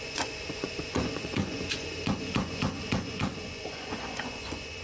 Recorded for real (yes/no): no